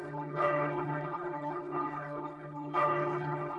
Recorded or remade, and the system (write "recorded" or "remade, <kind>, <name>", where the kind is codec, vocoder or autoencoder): remade, codec, HILCodec